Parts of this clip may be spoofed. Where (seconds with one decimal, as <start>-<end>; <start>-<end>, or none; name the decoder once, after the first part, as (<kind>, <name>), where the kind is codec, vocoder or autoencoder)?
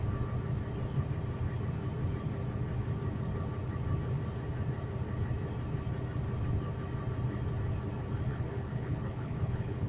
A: 8.3-9.9 (codec, HILCodec)